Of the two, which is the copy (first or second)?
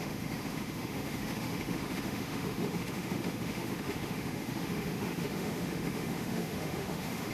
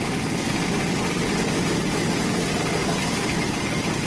first